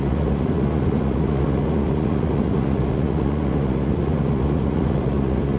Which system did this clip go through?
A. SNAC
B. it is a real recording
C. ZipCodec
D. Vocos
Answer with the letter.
D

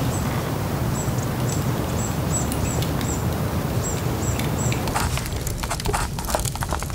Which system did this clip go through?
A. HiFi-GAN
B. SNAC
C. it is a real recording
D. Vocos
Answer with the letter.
C